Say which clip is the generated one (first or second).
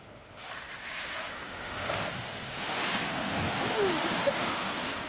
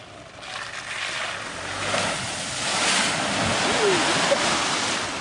first